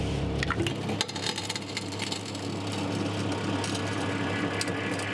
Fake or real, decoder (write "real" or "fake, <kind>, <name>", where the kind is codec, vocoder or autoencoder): real